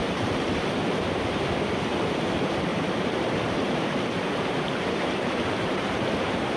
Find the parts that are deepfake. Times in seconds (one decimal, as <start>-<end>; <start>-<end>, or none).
0.0-1.4; 2.7-6.6